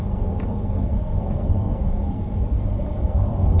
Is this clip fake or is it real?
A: fake